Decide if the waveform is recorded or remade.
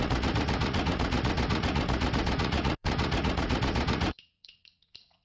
remade